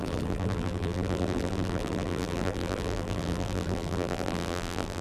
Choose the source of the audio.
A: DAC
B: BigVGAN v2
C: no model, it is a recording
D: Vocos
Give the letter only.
B